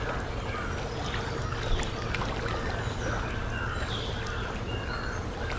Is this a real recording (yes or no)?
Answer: yes